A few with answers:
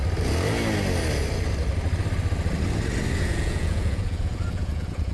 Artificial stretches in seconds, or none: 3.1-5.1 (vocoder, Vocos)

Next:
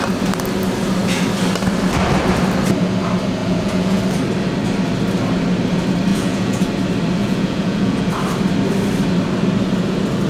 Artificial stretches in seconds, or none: 3.4-4.0 (vocoder, Vocos); 6.1-6.7; 7.2-8.1

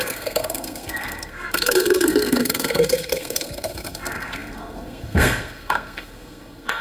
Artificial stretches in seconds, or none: 0.0-6.8 (codec, SNAC)

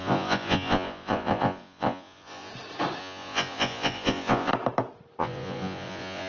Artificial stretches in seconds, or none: 0.0-2.5 (vocoder, Vocos); 3.0-4.5; 5.2-6.3

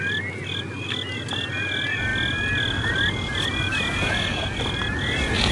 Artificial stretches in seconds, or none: none

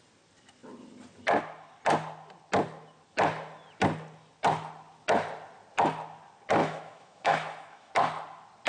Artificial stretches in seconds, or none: 6.6-7.9 (autoencoder, DAC-VAE)

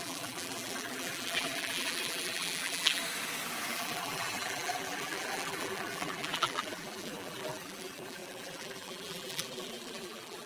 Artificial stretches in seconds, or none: 0.0-3.0 (vocoder, BigVGAN v2); 3.7-10.5